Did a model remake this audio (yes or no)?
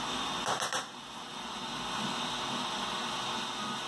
no